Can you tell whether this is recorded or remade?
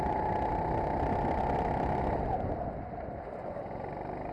recorded